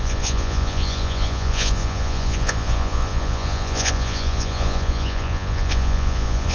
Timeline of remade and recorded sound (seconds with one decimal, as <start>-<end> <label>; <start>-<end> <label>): 0.0-6.5 remade